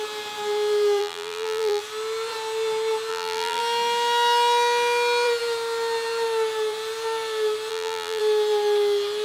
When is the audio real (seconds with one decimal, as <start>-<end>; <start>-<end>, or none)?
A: 0.0-1.0; 1.8-3.1; 3.6-7.7; 8.2-9.2